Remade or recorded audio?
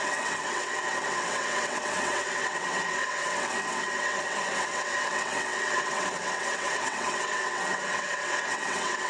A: remade